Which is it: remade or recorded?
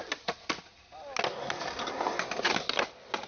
recorded